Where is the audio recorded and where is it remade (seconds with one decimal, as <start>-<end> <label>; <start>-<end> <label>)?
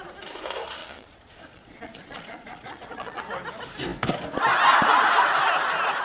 0.0-0.8 recorded; 0.8-3.2 remade; 3.2-6.0 recorded